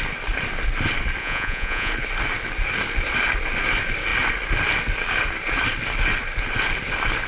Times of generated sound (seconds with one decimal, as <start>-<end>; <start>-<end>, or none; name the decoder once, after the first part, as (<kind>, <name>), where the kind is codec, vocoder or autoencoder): 1.2-1.9 (vocoder, Vocos)